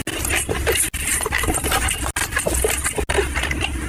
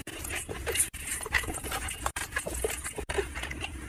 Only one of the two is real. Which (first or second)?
first